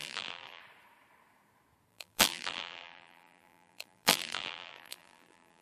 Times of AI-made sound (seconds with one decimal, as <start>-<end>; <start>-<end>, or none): 0.0-0.6; 1.9-5.6